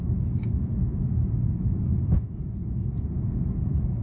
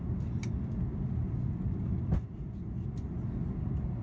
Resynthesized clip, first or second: first